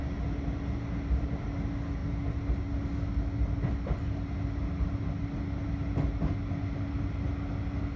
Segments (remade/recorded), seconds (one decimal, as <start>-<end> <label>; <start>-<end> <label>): 0.0-8.0 recorded